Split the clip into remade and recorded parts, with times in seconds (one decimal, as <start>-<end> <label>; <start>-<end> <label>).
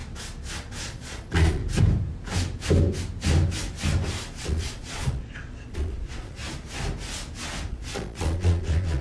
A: 0.0-0.8 recorded; 0.8-1.6 remade; 1.6-4.4 recorded; 4.4-6.4 remade; 6.4-7.7 recorded; 7.7-9.0 remade